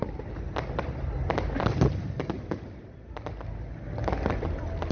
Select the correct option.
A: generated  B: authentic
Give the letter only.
B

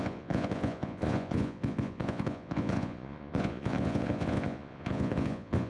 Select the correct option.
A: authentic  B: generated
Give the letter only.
B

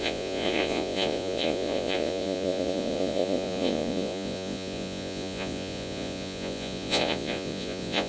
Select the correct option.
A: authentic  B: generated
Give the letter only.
B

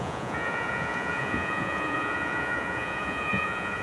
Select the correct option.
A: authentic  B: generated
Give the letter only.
B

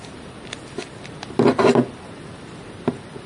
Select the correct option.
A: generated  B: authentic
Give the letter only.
B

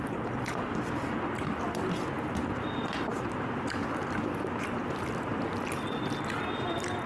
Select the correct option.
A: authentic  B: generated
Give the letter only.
A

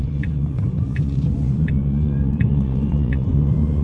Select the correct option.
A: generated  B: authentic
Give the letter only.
A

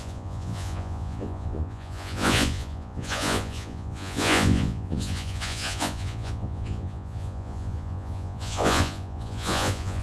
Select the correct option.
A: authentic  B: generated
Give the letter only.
B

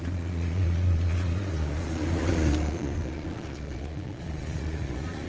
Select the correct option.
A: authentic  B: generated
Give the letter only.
B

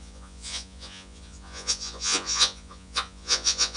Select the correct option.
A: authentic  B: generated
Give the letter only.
B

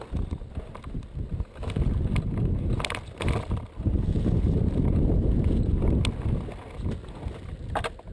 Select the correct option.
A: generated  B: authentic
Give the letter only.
B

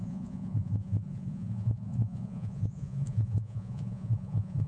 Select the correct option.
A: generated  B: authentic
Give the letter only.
A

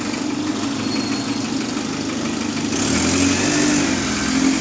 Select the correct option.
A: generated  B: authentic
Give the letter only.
B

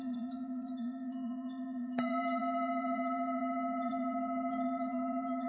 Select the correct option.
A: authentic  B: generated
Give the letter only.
B